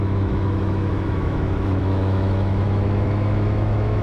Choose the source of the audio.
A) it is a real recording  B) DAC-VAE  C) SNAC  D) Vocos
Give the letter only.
B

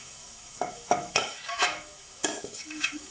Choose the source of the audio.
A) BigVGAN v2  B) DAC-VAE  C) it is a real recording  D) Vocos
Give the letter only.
B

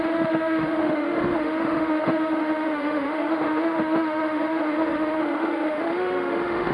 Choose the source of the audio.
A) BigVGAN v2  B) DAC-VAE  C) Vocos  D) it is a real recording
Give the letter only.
B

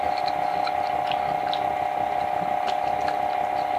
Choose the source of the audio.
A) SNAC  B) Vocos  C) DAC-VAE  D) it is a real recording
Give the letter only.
D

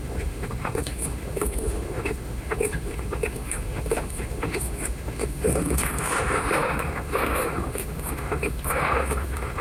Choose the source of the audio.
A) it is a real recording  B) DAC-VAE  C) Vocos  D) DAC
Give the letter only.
B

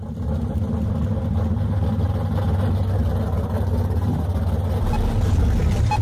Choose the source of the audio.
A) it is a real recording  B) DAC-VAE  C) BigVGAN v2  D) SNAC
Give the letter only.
A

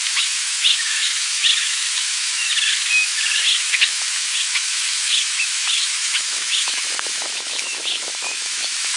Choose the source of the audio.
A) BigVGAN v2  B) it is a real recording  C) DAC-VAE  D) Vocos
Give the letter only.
C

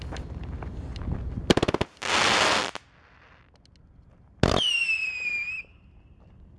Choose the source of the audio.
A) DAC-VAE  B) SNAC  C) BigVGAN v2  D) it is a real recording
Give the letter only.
D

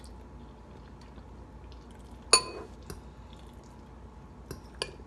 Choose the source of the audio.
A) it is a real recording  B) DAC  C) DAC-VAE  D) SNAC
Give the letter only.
A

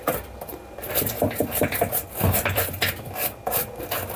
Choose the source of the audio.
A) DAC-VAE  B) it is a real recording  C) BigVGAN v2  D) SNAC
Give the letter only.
B